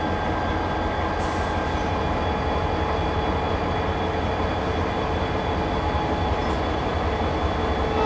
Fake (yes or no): no